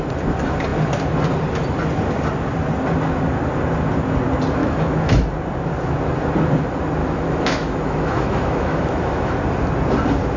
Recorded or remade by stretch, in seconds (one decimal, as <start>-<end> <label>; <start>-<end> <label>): 0.0-4.6 recorded; 4.6-5.2 remade; 5.2-7.0 recorded; 7.0-9.3 remade; 9.3-10.4 recorded